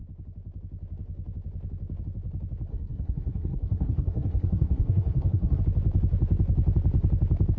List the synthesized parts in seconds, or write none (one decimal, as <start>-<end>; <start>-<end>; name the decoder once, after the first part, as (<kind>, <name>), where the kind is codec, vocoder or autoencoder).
2.7-5.6 (codec, SNAC)